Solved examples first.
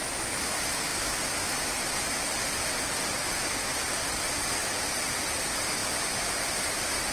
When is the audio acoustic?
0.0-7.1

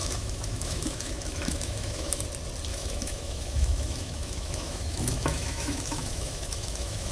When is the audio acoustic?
2.2-2.7